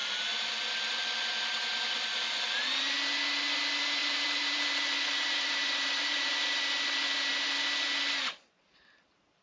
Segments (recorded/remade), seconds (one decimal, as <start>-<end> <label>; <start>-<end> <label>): 0.0-4.0 recorded; 4.0-6.2 remade; 6.2-9.4 recorded